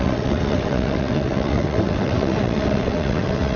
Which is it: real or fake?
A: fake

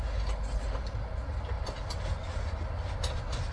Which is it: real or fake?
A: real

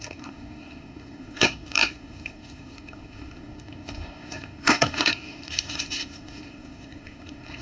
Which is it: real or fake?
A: fake